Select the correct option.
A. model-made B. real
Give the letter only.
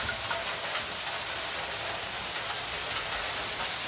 B